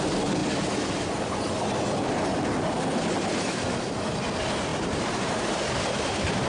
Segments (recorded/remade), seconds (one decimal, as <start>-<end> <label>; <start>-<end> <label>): 0.0-4.7 recorded; 4.7-6.5 remade